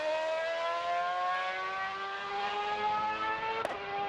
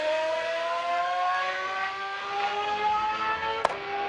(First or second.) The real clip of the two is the first